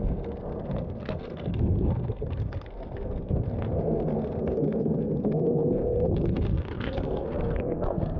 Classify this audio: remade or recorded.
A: remade